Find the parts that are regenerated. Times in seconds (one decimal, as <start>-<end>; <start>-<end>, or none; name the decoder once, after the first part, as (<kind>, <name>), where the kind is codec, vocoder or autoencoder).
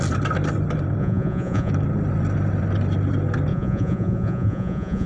1.0-1.7 (vocoder, Vocos); 3.5-5.1